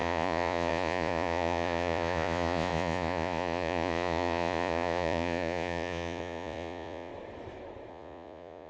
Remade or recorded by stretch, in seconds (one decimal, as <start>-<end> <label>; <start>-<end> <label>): 0.0-7.1 remade; 7.1-7.9 recorded; 7.9-8.7 remade